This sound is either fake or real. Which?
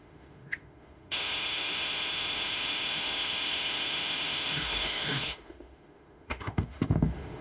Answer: fake